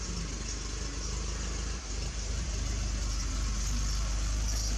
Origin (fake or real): real